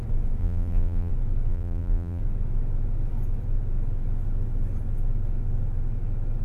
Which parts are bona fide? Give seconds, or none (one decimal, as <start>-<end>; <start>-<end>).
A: 0.0-0.4; 1.1-1.5; 2.2-6.4